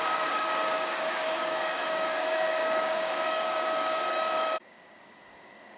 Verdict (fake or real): fake